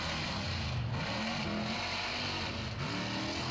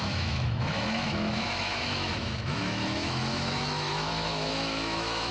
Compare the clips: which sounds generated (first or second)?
second